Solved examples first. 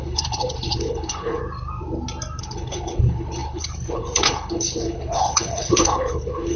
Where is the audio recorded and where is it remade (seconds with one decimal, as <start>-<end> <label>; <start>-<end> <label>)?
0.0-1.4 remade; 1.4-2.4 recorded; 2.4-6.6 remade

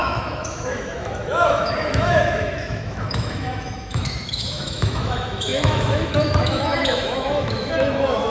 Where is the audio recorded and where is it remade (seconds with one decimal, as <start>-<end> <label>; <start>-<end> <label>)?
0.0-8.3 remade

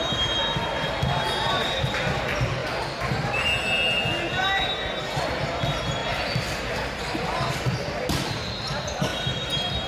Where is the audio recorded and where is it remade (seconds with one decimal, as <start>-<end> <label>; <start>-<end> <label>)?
0.0-9.9 recorded

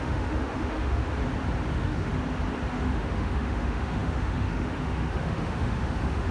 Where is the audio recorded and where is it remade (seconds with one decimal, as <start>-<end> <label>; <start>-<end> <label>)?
0.0-1.0 remade; 1.0-1.7 recorded; 1.7-2.1 remade; 2.1-2.7 recorded; 2.7-6.3 remade

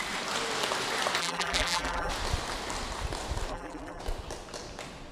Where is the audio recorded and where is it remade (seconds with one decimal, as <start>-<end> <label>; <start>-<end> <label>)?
0.0-1.2 recorded; 1.2-2.1 remade; 2.1-3.5 recorded; 3.5-4.0 remade; 4.0-5.1 recorded

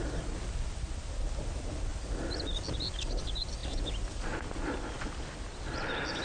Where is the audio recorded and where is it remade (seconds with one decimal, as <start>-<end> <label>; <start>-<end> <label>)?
0.0-6.2 recorded